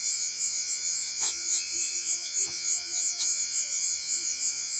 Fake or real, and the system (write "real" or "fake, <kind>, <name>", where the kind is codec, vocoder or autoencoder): fake, vocoder, Vocos